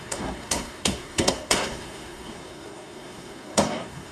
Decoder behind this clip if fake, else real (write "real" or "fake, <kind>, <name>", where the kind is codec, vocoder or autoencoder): fake, codec, SNAC